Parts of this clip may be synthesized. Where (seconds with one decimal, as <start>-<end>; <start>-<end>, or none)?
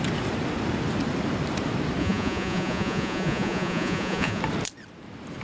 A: 2.0-4.4